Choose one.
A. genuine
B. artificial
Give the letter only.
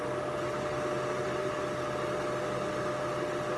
A